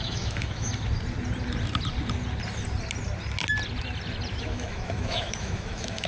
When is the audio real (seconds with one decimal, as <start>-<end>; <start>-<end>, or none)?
0.7-4.4